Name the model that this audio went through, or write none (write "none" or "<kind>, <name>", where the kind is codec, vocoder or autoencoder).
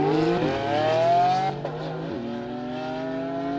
none